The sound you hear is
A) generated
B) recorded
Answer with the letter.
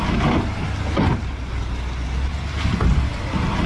B